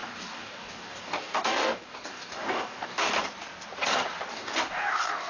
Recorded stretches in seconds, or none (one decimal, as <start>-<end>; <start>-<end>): 3.1-4.3